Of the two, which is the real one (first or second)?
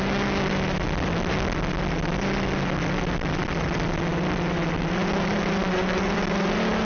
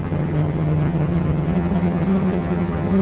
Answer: first